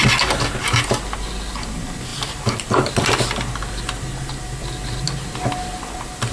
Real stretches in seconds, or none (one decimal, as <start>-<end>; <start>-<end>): 0.0-6.3